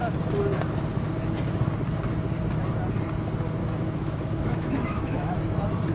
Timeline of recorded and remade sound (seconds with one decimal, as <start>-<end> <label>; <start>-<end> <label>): 0.0-3.6 recorded; 3.6-5.3 remade; 5.3-5.9 recorded

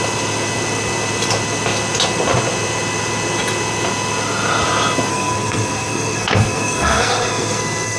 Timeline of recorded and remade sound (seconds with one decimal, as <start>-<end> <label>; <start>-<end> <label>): 0.0-5.1 recorded; 5.1-8.0 remade

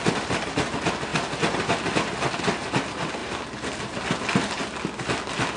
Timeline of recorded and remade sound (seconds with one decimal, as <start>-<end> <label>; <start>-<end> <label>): 0.0-5.6 recorded

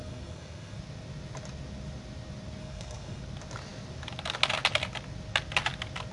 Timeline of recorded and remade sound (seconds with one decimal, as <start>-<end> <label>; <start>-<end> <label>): 0.0-0.8 remade; 0.8-2.6 recorded; 2.6-3.2 remade; 3.2-6.1 recorded

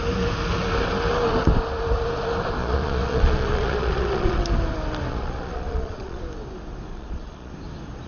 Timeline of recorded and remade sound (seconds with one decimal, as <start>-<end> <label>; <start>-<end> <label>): 0.0-2.6 recorded; 2.6-4.4 remade; 4.4-5.1 recorded; 5.1-6.2 remade; 6.2-6.9 recorded; 6.9-7.5 remade; 7.5-8.1 recorded